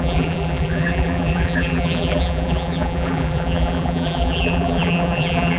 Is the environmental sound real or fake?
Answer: fake